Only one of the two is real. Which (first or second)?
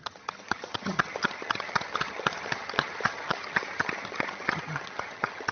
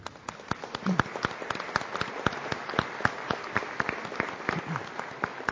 second